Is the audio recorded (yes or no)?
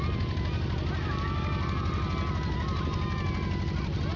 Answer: yes